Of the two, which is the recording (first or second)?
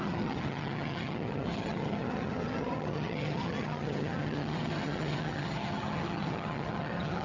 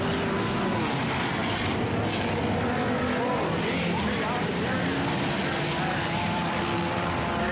second